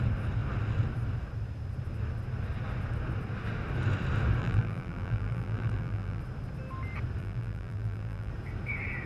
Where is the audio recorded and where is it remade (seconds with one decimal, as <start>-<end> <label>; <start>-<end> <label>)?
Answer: 0.0-4.4 recorded; 4.4-6.2 remade; 6.2-7.2 recorded; 7.2-8.3 remade; 8.3-9.1 recorded